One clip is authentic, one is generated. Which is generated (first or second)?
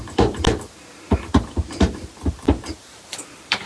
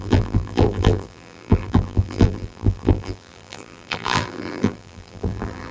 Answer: second